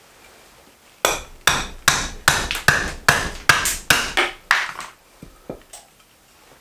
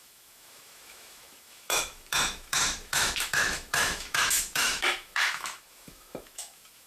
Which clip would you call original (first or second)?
first